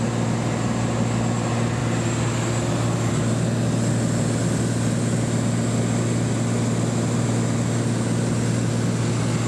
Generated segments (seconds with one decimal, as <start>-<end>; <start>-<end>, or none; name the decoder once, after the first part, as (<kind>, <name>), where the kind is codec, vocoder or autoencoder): none